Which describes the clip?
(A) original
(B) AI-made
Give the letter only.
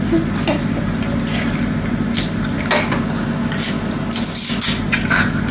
A